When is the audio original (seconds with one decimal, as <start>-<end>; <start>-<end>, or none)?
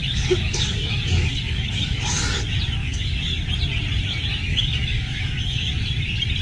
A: 2.4-2.8; 3.4-4.5; 5.7-6.4